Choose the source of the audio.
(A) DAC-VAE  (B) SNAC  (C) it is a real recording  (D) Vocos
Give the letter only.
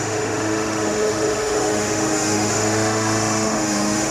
A